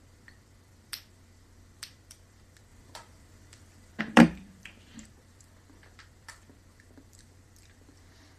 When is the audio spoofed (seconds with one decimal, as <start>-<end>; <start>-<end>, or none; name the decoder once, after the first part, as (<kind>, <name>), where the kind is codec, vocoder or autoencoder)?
0.0-8.4 (vocoder, BigVGAN v2)